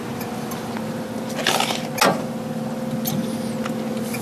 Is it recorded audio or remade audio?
recorded